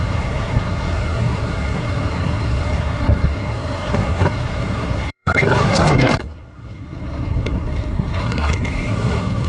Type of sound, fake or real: fake